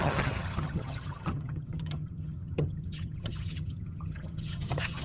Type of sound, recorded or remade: remade